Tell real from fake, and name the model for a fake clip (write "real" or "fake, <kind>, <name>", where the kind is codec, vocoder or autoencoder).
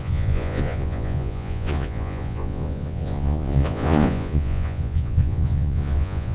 fake, vocoder, Vocos